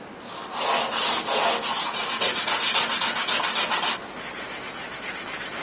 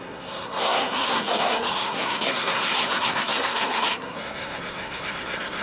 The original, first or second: first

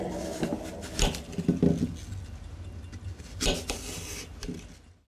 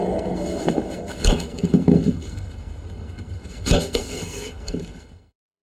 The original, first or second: first